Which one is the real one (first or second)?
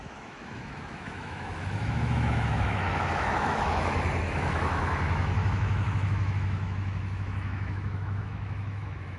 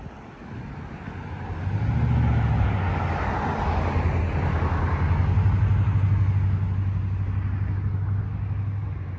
second